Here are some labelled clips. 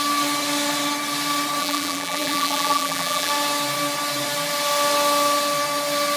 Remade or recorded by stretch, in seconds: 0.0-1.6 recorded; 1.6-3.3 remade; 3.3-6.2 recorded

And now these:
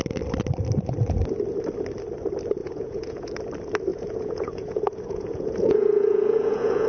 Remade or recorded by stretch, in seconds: 0.0-2.6 recorded; 2.6-3.3 remade; 3.3-3.9 recorded; 3.9-6.9 remade